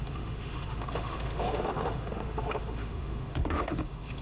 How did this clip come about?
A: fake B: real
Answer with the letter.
A